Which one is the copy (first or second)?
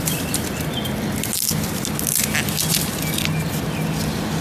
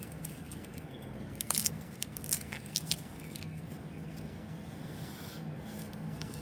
second